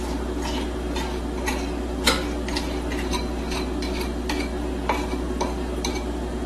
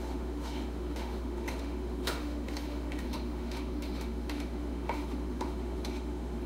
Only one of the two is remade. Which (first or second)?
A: second